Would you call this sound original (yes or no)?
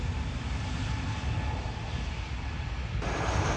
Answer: yes